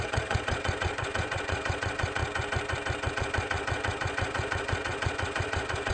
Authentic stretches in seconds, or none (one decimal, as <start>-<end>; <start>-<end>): 2.2-3.1